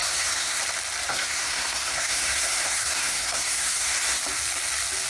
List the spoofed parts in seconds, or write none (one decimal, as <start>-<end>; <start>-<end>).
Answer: 0.0-0.6; 1.1-4.2